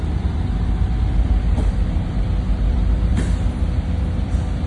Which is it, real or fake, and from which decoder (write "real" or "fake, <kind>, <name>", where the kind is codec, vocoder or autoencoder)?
fake, vocoder, BigVGAN v2